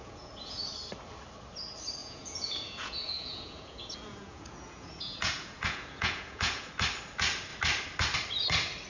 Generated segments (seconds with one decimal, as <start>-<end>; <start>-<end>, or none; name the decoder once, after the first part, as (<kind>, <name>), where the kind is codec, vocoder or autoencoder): 0.0-0.7 (vocoder, Vocos); 2.0-6.7